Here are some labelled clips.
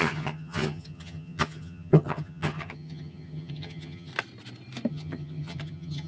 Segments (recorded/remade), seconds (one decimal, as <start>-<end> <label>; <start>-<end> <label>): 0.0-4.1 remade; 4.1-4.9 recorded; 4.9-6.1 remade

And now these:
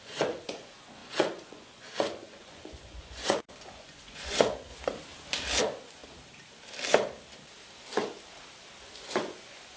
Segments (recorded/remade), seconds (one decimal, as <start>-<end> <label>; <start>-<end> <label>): 0.0-4.7 remade; 4.7-5.6 recorded; 5.6-6.0 remade; 6.0-8.8 recorded; 8.8-9.8 remade

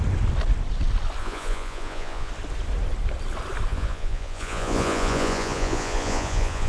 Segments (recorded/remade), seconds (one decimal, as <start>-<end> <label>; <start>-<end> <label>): 0.0-1.2 recorded; 1.2-2.3 remade; 2.3-3.7 recorded; 3.7-6.7 remade

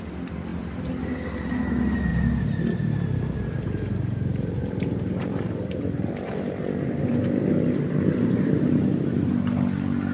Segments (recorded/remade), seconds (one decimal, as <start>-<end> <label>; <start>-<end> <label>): 0.0-2.1 recorded; 2.1-2.6 remade; 2.6-4.6 recorded; 4.6-9.3 remade; 9.3-10.1 recorded